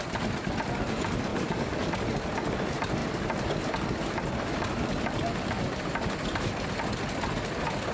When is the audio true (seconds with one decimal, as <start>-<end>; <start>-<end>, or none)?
0.0-1.3; 1.9-7.9